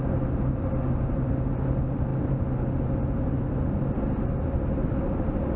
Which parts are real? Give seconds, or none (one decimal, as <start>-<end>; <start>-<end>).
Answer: 0.0-5.6